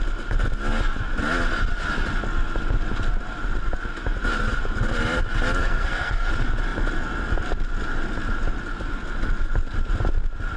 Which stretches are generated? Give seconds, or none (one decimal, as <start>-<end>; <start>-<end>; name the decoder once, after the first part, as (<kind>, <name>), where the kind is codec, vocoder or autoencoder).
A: 5.6-6.3 (codec, SNAC)

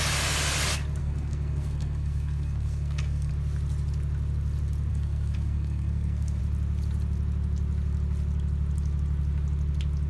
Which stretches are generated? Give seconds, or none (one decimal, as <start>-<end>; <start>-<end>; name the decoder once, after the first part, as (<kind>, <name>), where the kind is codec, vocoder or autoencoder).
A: 1.0-3.3 (codec, SNAC); 4.9-6.4

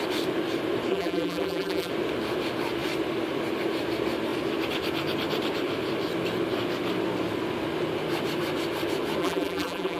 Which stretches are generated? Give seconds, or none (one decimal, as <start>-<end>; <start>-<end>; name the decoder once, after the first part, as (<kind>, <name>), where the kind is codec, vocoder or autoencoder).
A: 0.9-1.9 (vocoder, BigVGAN v2); 9.2-10.0

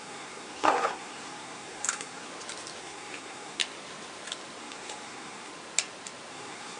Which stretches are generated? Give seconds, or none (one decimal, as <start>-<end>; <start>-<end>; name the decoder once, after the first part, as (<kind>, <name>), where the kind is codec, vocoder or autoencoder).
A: 0.0-2.3 (codec, SNAC); 2.8-3.6; 4.6-5.5; 6.3-6.8

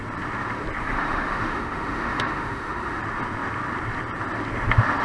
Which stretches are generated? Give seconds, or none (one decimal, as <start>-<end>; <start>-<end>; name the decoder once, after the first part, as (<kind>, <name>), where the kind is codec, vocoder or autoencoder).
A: 0.8-3.0 (autoencoder, DAC-VAE)

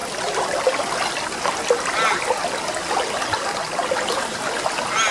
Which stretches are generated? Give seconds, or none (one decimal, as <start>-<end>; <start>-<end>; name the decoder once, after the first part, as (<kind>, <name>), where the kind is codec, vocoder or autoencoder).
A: none